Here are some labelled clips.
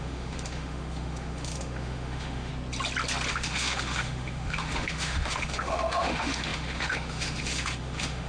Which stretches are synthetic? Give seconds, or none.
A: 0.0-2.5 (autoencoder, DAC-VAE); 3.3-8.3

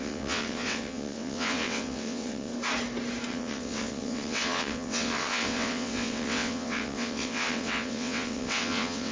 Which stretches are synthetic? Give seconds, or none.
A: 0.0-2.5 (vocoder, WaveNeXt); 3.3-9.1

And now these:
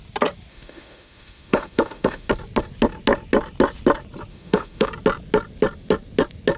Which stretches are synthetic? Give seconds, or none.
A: 0.5-2.3 (autoencoder, DAC-VAE); 4.3-4.9